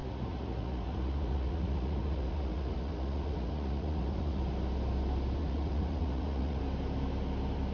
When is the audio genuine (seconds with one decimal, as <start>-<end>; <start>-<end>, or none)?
4.4-5.4; 6.6-7.7